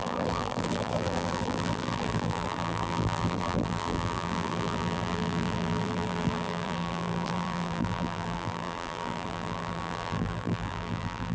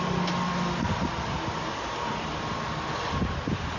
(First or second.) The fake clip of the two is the first